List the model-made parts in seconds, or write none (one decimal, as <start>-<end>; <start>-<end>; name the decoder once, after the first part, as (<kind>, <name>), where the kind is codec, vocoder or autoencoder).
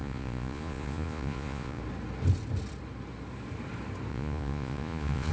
0.0-1.8 (vocoder, Vocos); 4.1-5.3